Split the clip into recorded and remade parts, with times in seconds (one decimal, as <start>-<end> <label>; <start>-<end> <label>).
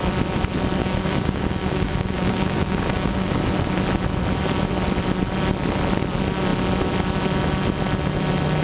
0.0-0.8 recorded; 0.8-3.3 remade; 3.3-8.6 recorded